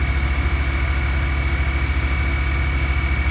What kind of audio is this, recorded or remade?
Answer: recorded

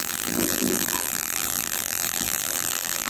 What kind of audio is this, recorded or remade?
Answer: remade